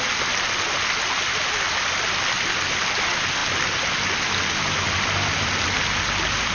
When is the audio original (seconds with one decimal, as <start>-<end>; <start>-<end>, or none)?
0.0-6.5